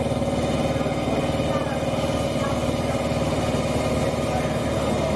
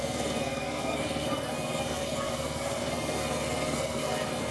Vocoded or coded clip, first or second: second